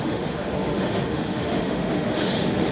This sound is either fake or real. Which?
fake